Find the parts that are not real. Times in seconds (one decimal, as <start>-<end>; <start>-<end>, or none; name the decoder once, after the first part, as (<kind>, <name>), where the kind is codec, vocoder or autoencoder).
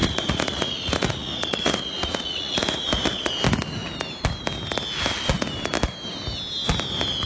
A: 0.0-3.3 (vocoder, Vocos)